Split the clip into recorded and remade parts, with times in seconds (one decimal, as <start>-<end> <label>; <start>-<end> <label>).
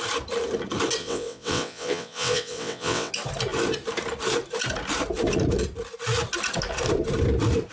0.0-1.0 recorded; 1.0-3.1 remade; 3.1-7.7 recorded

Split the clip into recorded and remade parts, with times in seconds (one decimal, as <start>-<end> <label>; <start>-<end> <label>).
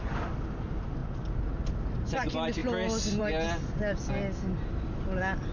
0.0-5.5 recorded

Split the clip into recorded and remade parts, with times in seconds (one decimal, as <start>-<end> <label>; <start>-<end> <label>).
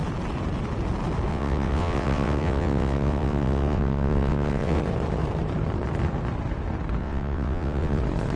0.0-1.3 recorded; 1.3-4.8 remade; 4.8-7.0 recorded; 7.0-8.0 remade; 8.0-8.4 recorded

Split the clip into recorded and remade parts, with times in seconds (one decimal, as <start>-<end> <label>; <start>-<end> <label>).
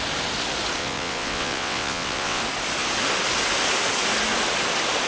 0.0-0.8 recorded; 0.8-2.4 remade; 2.4-5.1 recorded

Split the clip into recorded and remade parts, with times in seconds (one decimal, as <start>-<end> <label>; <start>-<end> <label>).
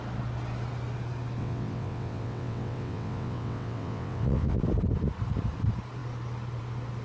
0.0-1.4 recorded; 1.4-4.6 remade; 4.6-7.0 recorded